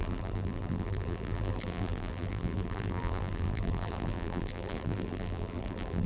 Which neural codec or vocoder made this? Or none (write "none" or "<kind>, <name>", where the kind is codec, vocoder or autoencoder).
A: vocoder, BigVGAN v2